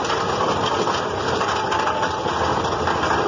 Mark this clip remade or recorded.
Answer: recorded